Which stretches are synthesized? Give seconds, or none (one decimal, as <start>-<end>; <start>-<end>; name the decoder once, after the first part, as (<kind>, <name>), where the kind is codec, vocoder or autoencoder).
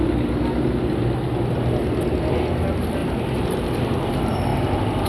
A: 4.5-5.1 (vocoder, BigVGAN v2)